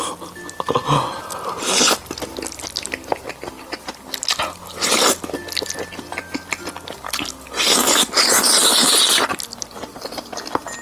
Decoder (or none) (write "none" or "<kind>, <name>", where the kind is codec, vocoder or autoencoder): none